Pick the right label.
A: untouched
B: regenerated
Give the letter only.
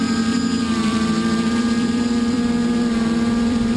B